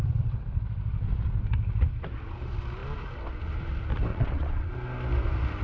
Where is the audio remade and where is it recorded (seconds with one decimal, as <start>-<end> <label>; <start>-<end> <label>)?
0.0-4.1 recorded; 4.1-4.7 remade; 4.7-5.6 recorded

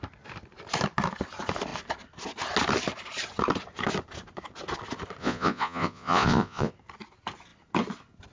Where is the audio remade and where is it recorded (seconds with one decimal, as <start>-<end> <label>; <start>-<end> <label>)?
0.0-5.2 recorded; 5.2-6.7 remade; 6.7-8.3 recorded

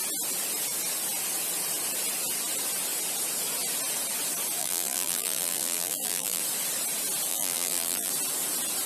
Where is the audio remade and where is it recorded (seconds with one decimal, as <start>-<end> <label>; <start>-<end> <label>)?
0.0-4.6 recorded; 4.6-6.4 remade; 6.4-7.3 recorded; 7.3-8.1 remade; 8.1-8.9 recorded

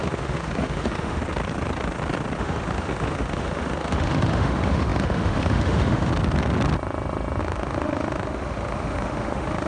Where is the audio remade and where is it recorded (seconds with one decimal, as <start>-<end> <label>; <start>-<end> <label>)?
0.0-1.2 remade; 1.2-2.4 recorded; 2.4-6.1 remade; 6.1-7.4 recorded; 7.4-9.7 remade

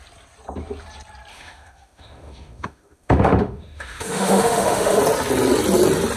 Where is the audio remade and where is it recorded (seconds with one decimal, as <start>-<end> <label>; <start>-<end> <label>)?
0.0-1.3 recorded; 1.3-5.0 remade; 5.0-6.2 recorded

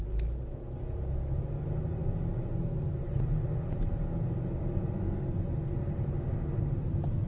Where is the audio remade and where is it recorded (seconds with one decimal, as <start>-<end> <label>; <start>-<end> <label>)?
0.0-7.3 recorded

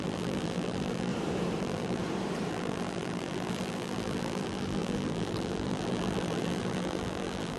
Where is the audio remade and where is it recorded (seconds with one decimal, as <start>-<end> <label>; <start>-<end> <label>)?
0.0-1.1 remade; 1.1-1.6 recorded; 1.6-2.0 remade; 2.0-2.5 recorded; 2.5-7.6 remade

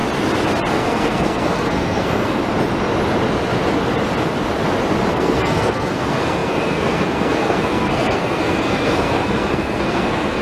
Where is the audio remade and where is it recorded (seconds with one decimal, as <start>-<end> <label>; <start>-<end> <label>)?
0.0-0.7 recorded; 0.7-2.4 remade; 2.4-5.1 recorded; 5.1-10.4 remade